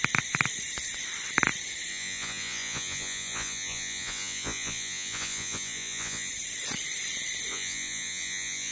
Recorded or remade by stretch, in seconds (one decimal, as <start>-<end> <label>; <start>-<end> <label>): 0.0-1.9 recorded; 1.9-6.3 remade; 6.3-7.5 recorded; 7.5-8.7 remade